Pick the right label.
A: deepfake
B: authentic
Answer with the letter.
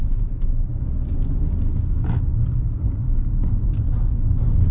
B